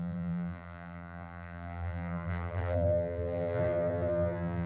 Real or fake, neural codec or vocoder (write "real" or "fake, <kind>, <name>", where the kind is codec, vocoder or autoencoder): fake, vocoder, BigVGAN v2